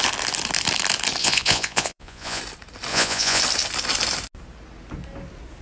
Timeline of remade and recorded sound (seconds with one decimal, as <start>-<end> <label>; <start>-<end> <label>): 0.0-1.2 recorded; 1.2-2.4 remade; 2.4-2.9 recorded; 2.9-3.4 remade; 3.4-5.6 recorded